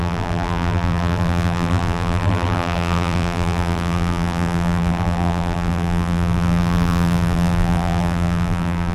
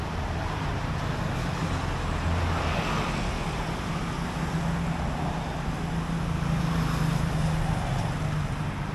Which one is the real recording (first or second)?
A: second